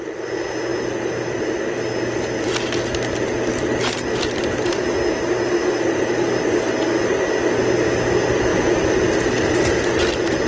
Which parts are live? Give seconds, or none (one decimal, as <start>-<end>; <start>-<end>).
0.0-5.6; 6.4-8.5; 10.1-10.5